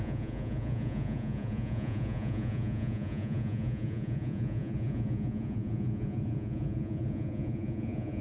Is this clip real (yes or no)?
no